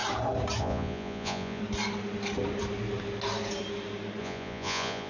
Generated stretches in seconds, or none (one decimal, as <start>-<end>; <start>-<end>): 0.6-1.6; 4.2-5.1